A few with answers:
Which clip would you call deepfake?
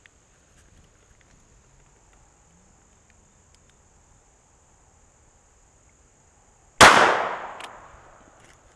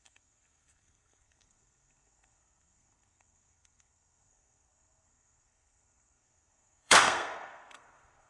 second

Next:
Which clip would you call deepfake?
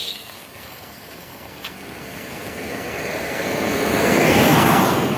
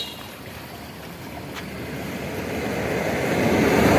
first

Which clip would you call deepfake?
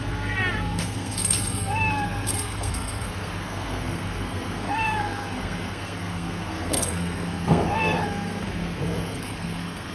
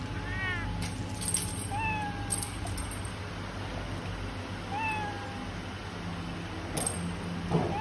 first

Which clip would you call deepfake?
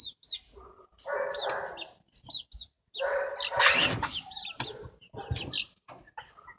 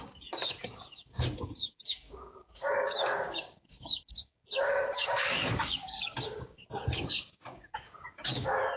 second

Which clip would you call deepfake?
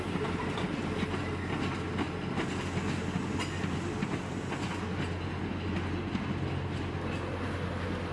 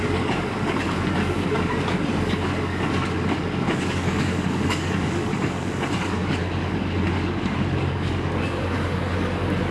second